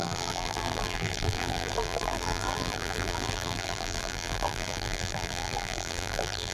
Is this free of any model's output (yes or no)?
no